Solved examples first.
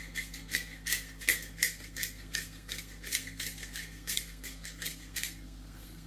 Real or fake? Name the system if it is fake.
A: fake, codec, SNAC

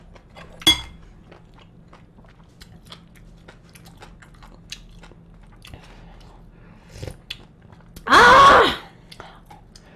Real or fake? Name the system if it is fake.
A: real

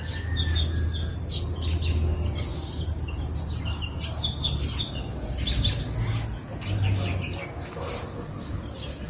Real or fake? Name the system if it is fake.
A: real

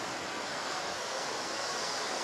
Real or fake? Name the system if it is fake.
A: fake, codec, SNAC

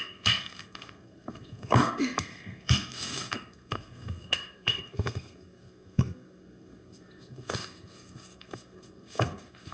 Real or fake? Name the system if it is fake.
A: fake, codec, SNAC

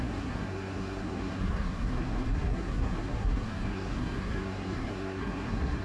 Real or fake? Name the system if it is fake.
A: fake, codec, SNAC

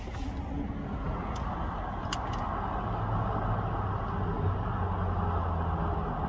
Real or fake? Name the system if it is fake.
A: real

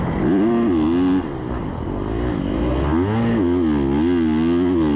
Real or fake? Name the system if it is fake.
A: real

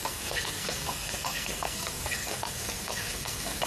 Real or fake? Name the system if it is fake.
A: fake, codec, SNAC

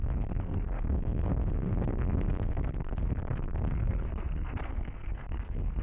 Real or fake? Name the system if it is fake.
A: fake, codec, SNAC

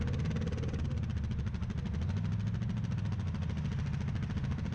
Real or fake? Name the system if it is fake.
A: real